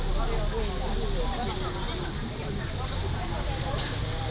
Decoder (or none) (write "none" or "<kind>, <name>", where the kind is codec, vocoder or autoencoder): none